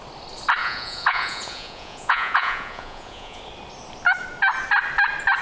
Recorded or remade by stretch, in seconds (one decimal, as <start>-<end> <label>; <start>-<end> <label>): 0.0-0.6 recorded; 0.6-3.4 remade; 3.4-5.4 recorded